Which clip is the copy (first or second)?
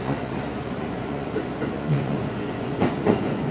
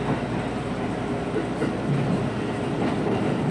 first